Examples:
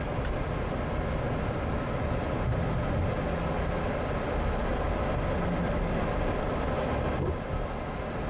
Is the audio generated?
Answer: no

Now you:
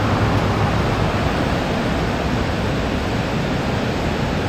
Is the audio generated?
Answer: no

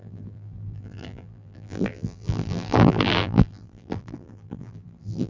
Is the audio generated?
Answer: yes